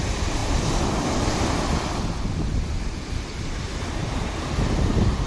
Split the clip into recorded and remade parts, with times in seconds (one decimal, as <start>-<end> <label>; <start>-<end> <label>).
0.0-0.4 recorded; 0.4-3.6 remade; 3.6-5.3 recorded